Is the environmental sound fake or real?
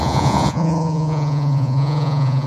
fake